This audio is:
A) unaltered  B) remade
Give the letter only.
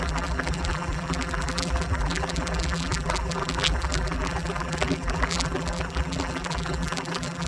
B